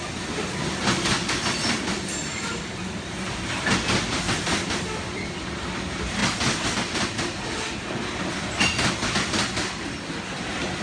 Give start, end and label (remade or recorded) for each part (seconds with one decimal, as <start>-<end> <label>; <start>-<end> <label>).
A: 0.0-10.8 recorded